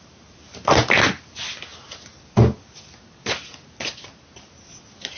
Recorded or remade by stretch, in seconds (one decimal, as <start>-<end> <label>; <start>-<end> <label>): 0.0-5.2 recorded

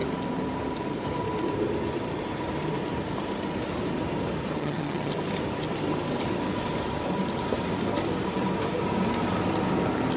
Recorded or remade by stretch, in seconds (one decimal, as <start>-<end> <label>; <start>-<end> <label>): 0.0-4.6 recorded; 4.6-5.1 remade; 5.1-10.2 recorded

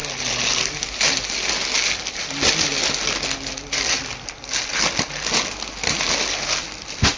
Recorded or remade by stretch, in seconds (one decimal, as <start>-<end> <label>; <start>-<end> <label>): 0.0-7.2 recorded

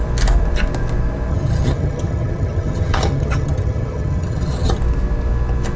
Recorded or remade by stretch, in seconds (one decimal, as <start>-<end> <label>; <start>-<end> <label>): 0.0-1.3 recorded; 1.3-4.8 remade; 4.8-5.8 recorded

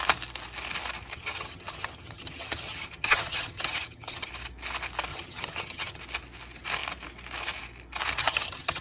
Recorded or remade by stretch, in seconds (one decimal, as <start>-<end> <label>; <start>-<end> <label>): 0.0-1.1 recorded; 1.1-4.3 remade; 4.3-5.1 recorded; 5.1-6.0 remade; 6.0-8.2 recorded; 8.2-8.8 remade